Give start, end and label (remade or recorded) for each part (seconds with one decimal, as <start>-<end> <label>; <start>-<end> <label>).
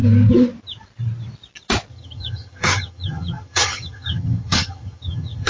0.0-1.9 recorded; 1.9-5.5 remade